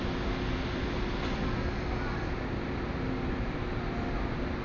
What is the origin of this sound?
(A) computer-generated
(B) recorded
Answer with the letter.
B